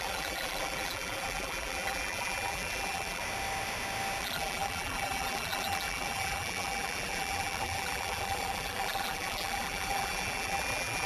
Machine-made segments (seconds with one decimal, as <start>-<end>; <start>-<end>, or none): 0.0-3.2; 4.2-11.1